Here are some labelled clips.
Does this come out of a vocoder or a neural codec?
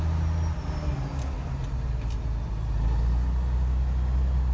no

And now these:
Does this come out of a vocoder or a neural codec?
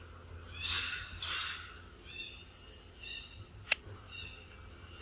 no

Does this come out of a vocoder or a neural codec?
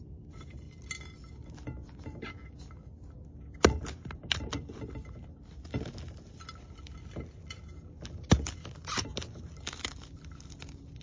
no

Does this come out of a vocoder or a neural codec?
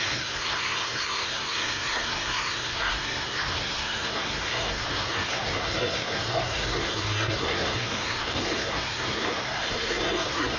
yes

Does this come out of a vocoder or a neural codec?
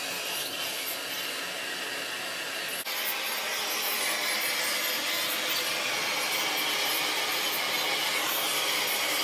no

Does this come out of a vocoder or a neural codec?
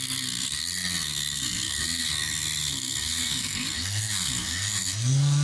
yes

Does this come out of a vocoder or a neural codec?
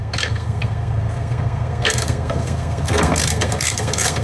yes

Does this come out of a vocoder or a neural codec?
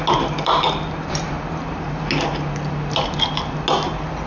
no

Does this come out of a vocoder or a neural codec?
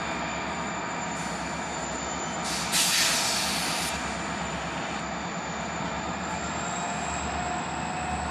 no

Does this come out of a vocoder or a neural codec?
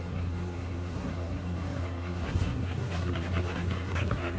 yes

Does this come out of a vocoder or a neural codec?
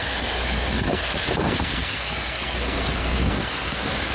yes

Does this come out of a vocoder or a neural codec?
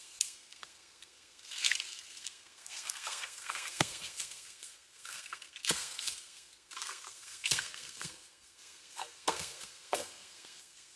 yes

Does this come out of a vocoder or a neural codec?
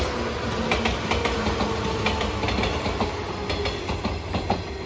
no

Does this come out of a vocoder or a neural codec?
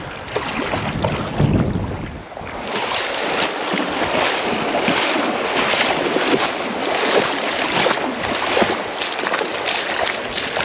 no